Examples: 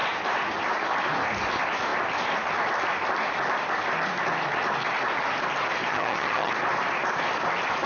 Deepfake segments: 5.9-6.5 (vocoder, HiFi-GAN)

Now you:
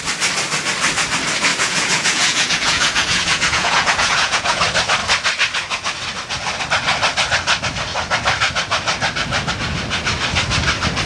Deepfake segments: 1.5-4.6 (vocoder, Vocos)

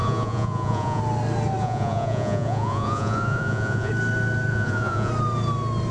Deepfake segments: 0.0-1.0 (vocoder, Vocos); 1.6-3.9; 4.5-5.1

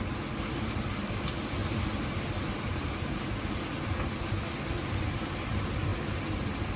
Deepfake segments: 0.5-1.2 (vocoder, BigVGAN v2); 1.6-3.5

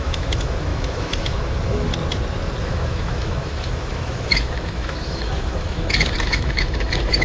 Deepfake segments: 0.0-1.9 (autoencoder, DAC-VAE); 2.6-7.2

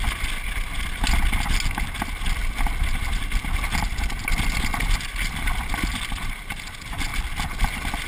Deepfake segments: none